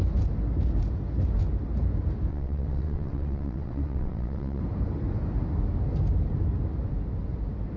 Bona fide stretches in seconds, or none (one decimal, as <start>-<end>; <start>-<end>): 0.0-2.3; 4.6-7.8